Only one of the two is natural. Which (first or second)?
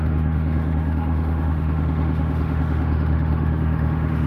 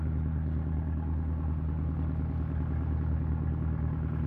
second